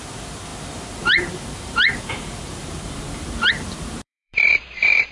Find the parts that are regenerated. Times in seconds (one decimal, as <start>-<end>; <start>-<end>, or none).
0.0-5.1